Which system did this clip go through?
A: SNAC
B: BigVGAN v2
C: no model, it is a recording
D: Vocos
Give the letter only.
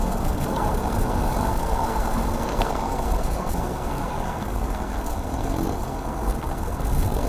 A